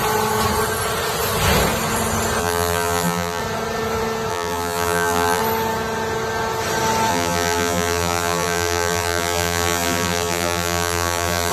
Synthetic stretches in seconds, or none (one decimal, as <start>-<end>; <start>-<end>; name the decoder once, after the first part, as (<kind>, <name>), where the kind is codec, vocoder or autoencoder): 2.4-3.4 (vocoder, BigVGAN v2); 4.3-5.4; 7.1-11.5